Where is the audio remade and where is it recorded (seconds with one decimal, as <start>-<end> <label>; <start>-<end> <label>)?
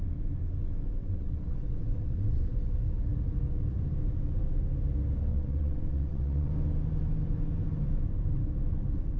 0.0-1.0 recorded; 1.0-2.6 remade; 2.6-5.3 recorded; 5.3-6.5 remade; 6.5-9.2 recorded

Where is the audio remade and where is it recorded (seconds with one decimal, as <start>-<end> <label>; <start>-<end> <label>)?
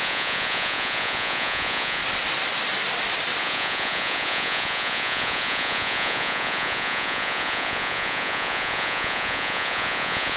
0.0-2.0 remade; 2.0-3.4 recorded; 3.4-10.4 remade